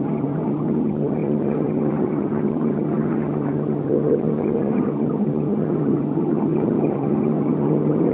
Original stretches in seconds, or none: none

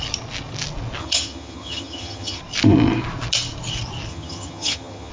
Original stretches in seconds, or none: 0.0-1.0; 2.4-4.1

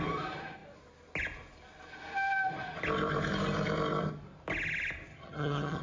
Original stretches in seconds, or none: 0.0-5.1